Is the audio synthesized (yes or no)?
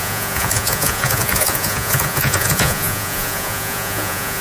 yes